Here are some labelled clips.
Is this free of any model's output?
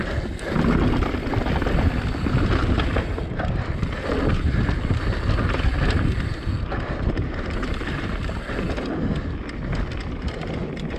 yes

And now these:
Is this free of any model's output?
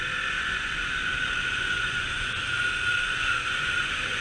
no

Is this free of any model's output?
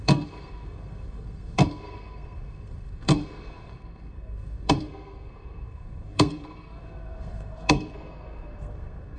no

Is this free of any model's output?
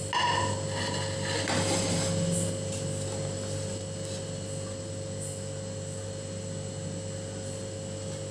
yes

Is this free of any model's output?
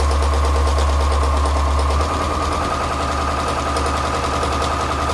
yes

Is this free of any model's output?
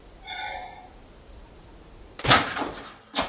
yes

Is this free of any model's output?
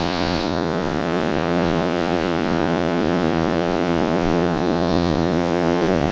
no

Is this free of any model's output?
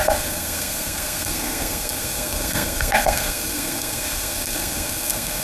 no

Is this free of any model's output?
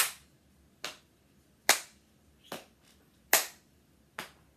yes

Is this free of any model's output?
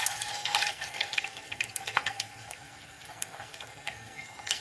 no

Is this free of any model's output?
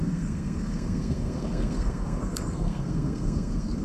no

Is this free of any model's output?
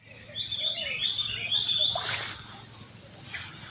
yes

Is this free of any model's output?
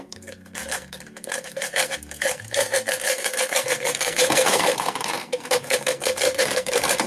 no